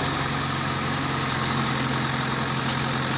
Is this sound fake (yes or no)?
no